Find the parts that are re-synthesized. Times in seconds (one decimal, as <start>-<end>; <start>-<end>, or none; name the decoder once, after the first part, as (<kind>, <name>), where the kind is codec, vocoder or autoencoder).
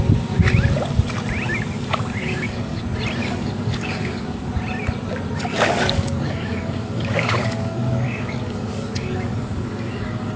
2.2-2.8 (codec, DAC); 3.2-4.5; 5.5-10.4